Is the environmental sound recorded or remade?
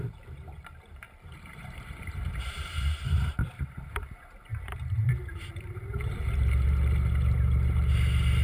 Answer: remade